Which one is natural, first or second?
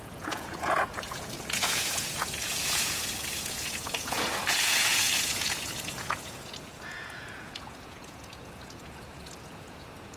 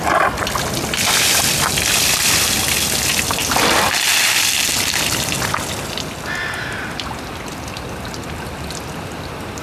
second